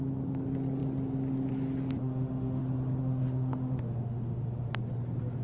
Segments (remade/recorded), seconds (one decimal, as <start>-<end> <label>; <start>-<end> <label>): 0.0-2.0 recorded; 2.0-2.6 remade; 2.6-3.0 recorded; 3.0-4.7 remade; 4.7-5.4 recorded